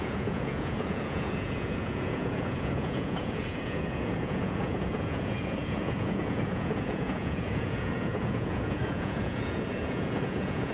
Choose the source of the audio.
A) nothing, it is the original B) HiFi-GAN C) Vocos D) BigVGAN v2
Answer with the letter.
C